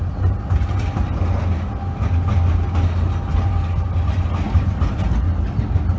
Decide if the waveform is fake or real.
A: real